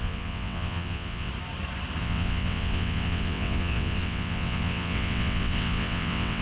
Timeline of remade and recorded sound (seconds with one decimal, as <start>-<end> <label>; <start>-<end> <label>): 0.0-1.3 remade; 1.3-2.0 recorded; 2.0-6.4 remade

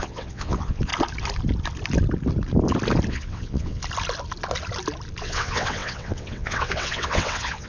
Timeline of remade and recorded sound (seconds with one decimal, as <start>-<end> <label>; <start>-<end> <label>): 0.0-0.9 remade; 0.9-3.1 recorded; 3.1-3.8 remade; 3.8-5.2 recorded; 5.2-7.7 remade

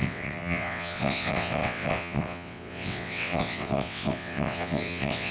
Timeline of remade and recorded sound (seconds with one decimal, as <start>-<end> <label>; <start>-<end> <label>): 0.0-5.3 remade

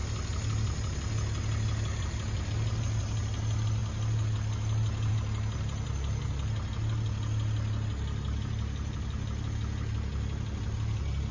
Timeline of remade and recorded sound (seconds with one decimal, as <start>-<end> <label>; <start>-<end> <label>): 0.0-11.3 recorded

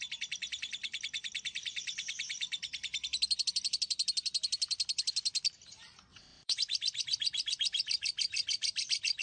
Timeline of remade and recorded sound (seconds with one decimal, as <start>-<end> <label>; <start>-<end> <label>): 0.0-6.1 recorded; 6.1-6.6 remade; 6.6-9.2 recorded

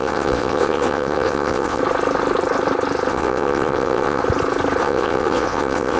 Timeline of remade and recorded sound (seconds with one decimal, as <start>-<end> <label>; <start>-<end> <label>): 0.0-1.8 remade; 1.8-3.1 recorded; 3.1-4.2 remade; 4.2-4.8 recorded; 4.8-6.0 remade

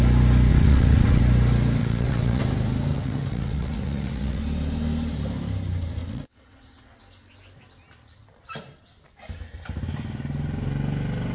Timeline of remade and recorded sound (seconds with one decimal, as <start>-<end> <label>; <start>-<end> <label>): 0.0-0.5 recorded; 0.5-1.2 remade; 1.2-1.8 recorded; 1.8-2.4 remade; 2.4-2.9 recorded; 2.9-4.4 remade; 4.4-6.0 recorded; 6.0-7.0 remade; 7.0-11.3 recorded